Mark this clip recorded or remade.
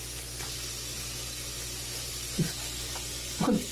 recorded